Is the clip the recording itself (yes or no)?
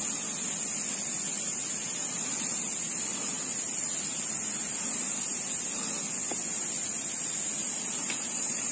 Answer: yes